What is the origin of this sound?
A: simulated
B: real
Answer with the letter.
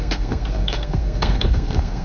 A